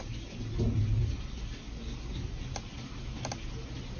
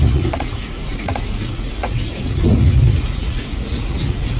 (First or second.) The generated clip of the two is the second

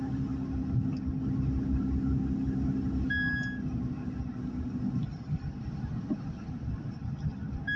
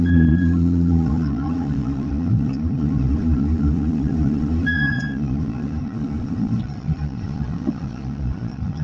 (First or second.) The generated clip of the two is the second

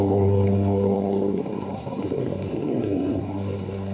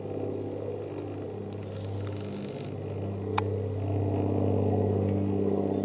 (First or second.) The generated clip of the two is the first